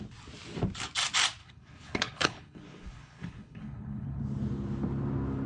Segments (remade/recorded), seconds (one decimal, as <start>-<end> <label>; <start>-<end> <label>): 0.0-1.4 recorded; 1.4-4.2 remade; 4.2-5.5 recorded